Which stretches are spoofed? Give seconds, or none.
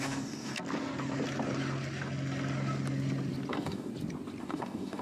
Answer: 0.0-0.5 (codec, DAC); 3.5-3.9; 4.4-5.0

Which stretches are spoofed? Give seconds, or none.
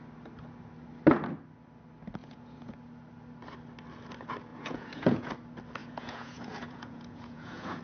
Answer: 2.2-2.7 (vocoder, Vocos); 4.5-5.3; 5.8-7.8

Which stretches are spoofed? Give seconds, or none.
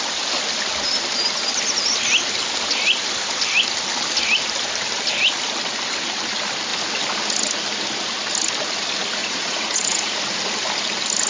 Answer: 9.2-10.2 (vocoder, Vocos)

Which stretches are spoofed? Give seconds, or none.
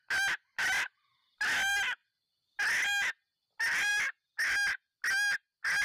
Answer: none